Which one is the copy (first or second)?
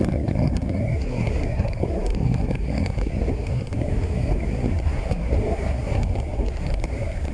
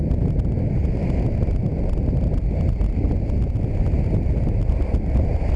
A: first